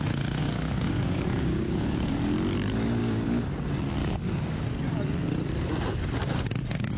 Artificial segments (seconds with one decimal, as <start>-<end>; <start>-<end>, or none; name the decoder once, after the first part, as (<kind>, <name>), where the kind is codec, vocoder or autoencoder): 0.4-2.1 (codec, DAC); 3.0-3.5; 4.0-4.6